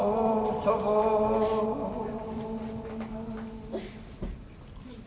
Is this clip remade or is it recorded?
recorded